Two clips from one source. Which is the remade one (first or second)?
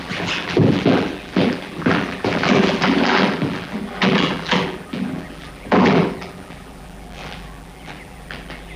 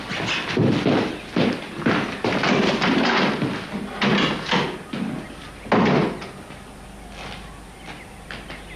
first